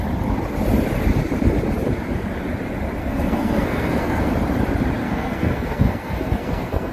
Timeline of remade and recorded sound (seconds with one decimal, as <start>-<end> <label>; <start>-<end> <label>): 0.0-3.0 recorded; 3.0-4.3 remade; 4.3-5.0 recorded; 5.0-6.9 remade